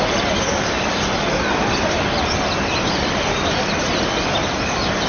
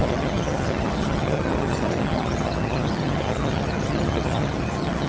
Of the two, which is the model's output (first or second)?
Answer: second